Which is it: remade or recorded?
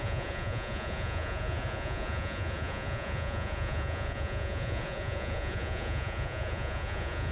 remade